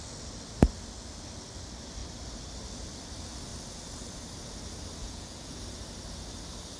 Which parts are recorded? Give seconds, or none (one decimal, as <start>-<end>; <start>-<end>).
0.0-5.0; 5.6-6.8